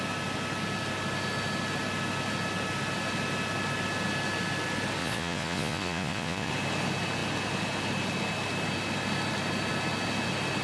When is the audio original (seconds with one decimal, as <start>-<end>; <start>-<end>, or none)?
0.0-5.0; 6.5-10.6